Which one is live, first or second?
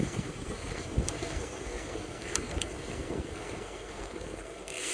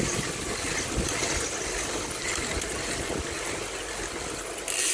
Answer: second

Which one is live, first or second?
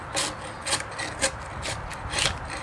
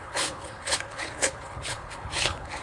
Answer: first